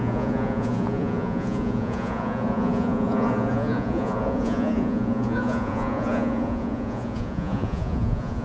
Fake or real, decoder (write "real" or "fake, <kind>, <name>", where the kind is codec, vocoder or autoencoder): fake, vocoder, Vocos